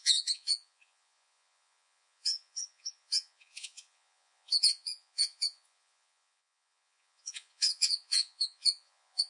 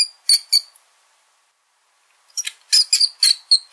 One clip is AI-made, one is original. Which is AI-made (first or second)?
first